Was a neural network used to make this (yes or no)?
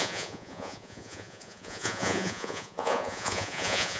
yes